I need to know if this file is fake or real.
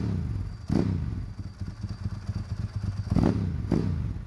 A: real